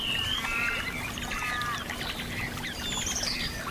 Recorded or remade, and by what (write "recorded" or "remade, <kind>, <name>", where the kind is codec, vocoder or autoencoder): remade, vocoder, BigVGAN v2